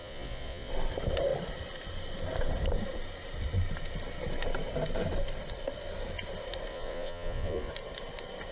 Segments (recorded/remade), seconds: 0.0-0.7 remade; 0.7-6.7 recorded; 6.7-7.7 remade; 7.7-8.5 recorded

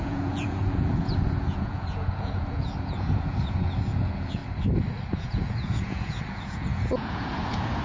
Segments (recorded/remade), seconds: 0.0-4.4 remade; 4.4-5.1 recorded; 5.1-7.8 remade

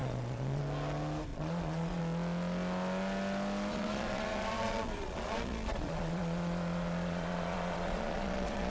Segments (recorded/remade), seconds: 0.0-0.6 remade; 0.6-1.3 recorded; 1.3-2.0 remade; 2.0-3.7 recorded; 3.7-8.7 remade